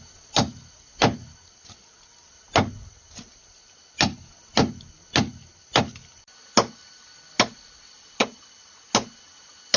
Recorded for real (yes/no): yes